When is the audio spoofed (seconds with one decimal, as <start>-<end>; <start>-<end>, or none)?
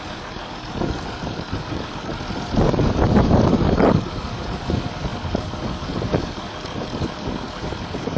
0.0-2.1; 2.6-8.2